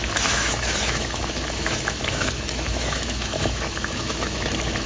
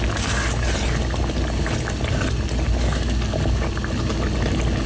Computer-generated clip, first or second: first